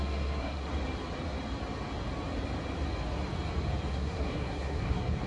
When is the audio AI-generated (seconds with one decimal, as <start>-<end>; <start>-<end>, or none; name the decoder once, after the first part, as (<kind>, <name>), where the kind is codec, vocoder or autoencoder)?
0.0-0.7 (codec, SNAC); 3.9-5.3